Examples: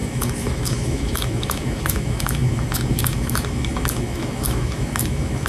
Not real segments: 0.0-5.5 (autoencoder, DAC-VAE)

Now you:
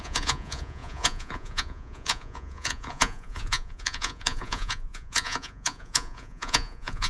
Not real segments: 0.0-7.1 (vocoder, Vocos)